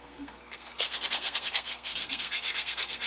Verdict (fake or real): fake